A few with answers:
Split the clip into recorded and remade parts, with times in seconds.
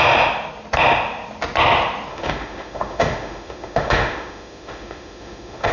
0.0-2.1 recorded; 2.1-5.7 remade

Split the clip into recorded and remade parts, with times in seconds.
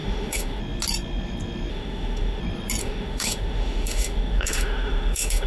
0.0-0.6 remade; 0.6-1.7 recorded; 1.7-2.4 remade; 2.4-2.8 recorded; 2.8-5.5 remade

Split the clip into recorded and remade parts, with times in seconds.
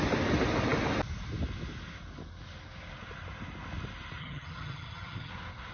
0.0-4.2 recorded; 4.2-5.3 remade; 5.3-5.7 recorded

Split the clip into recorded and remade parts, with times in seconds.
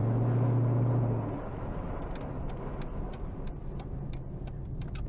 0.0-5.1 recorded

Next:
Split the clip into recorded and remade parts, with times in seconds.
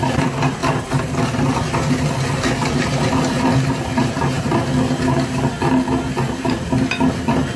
0.0-2.6 recorded; 2.6-4.6 remade; 4.6-7.6 recorded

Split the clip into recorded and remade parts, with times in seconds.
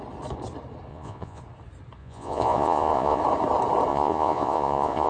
0.0-0.9 recorded; 0.9-1.4 remade; 1.4-2.0 recorded; 2.0-3.2 remade; 3.2-3.9 recorded; 3.9-5.1 remade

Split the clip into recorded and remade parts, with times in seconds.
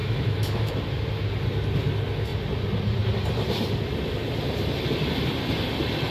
0.0-0.7 remade; 0.7-6.1 recorded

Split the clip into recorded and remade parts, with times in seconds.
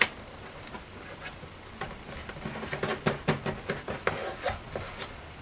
0.0-5.4 recorded